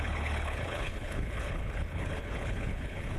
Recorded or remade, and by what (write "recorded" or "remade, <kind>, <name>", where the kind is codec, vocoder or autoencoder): remade, codec, HILCodec